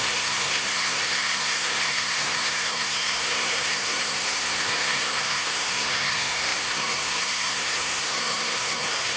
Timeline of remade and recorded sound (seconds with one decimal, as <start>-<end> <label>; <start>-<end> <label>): 0.0-9.2 remade